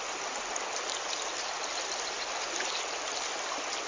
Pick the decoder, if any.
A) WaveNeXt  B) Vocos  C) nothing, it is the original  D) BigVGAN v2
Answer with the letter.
C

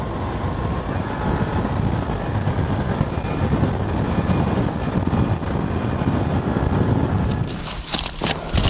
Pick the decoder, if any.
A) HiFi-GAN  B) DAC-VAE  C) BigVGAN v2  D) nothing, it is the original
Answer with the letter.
D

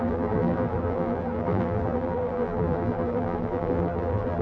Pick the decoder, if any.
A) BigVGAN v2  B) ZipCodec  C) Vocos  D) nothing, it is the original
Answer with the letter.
A